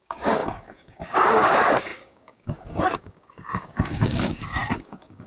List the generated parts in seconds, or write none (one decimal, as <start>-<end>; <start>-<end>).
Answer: 0.0-5.3